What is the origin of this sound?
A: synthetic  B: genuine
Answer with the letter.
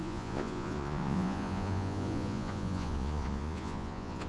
A